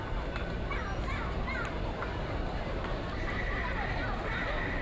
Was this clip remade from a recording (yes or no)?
no